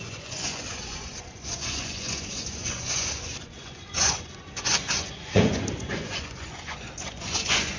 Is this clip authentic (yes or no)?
no